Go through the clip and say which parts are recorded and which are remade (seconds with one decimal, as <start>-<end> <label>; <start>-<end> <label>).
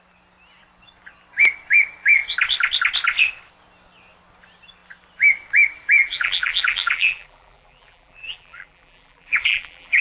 0.0-6.0 recorded; 6.0-10.0 remade